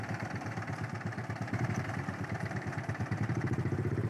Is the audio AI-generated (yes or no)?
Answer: yes